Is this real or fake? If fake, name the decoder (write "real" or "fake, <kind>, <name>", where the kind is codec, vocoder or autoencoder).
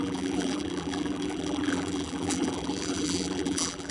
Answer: fake, vocoder, BigVGAN v2